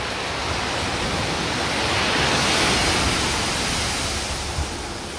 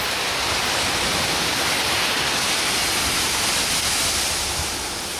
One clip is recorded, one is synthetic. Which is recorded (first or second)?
first